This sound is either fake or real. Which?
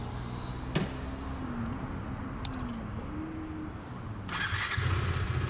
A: real